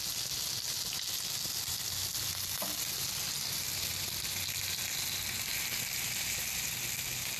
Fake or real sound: real